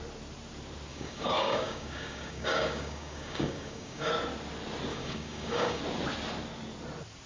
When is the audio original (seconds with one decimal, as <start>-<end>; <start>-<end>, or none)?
0.0-0.9; 4.1-4.9; 5.8-7.3